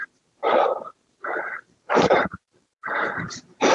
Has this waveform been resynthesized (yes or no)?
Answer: yes